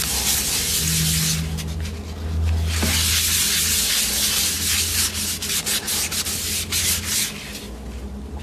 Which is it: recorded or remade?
recorded